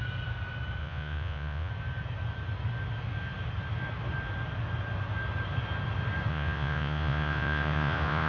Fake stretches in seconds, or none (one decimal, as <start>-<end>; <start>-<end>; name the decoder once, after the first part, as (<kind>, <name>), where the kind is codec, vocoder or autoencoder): 0.8-1.7 (vocoder, Vocos); 6.3-8.3